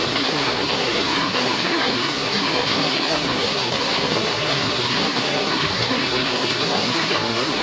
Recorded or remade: remade